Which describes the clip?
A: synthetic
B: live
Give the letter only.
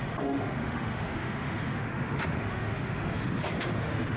A